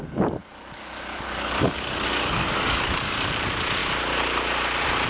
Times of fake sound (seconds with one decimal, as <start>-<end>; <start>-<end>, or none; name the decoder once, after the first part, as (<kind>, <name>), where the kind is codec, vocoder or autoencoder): 0.4-3.3 (codec, DAC)